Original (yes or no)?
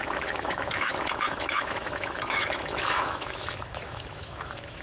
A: no